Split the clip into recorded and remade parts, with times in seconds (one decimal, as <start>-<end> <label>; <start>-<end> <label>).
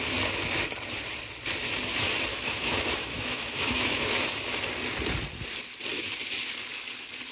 0.0-2.3 recorded; 2.3-4.4 remade; 4.4-7.3 recorded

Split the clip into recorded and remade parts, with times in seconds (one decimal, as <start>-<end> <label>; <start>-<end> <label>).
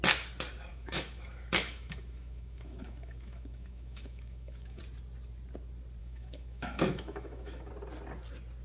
0.0-0.7 recorded; 0.7-4.8 remade; 4.8-6.0 recorded; 6.0-7.7 remade; 7.7-8.6 recorded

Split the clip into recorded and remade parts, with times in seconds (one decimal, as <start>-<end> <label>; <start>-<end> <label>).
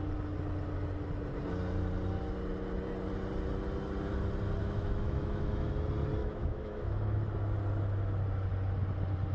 0.0-4.6 recorded; 4.6-5.7 remade; 5.7-6.2 recorded; 6.2-7.2 remade; 7.2-9.3 recorded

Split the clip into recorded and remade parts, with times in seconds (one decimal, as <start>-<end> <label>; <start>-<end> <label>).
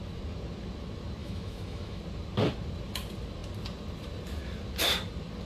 0.0-1.2 recorded; 1.2-2.0 remade; 2.0-5.4 recorded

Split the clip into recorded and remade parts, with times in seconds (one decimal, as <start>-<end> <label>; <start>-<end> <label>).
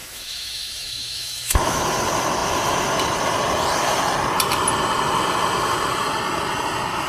0.0-1.8 remade; 1.8-7.1 recorded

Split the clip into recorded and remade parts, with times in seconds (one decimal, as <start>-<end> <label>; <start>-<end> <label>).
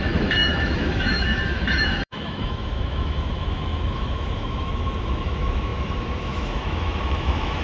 0.0-7.6 remade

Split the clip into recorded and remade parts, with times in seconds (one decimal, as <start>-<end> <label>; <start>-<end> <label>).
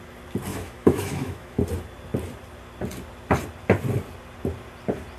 0.0-0.5 recorded; 0.5-1.6 remade; 1.6-5.2 recorded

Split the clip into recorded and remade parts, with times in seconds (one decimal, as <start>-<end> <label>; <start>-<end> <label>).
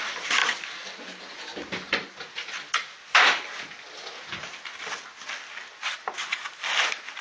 0.0-7.2 recorded